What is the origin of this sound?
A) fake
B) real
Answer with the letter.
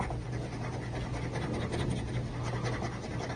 B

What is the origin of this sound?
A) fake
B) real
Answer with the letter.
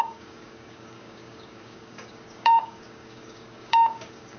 A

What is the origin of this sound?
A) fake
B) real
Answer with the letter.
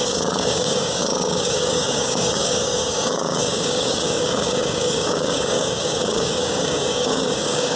A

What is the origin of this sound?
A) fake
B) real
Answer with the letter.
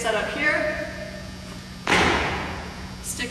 A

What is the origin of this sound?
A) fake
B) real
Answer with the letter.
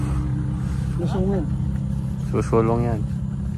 B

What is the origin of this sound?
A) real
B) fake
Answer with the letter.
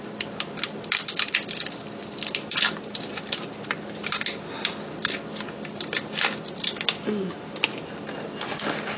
A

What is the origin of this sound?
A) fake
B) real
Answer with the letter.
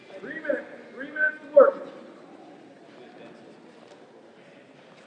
B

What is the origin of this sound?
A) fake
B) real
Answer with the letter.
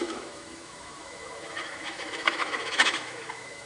A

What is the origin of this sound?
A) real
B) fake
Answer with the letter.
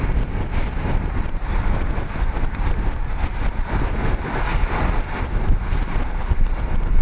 A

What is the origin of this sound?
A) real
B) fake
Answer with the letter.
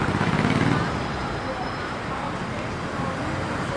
A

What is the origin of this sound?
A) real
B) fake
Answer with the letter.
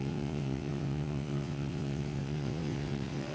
B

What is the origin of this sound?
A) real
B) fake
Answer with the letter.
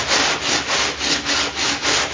A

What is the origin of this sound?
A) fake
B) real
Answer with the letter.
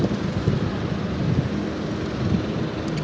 B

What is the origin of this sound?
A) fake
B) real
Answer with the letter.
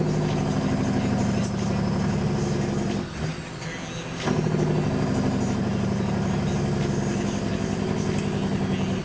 B